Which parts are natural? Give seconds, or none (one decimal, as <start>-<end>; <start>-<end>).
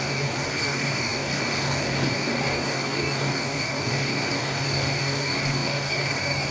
none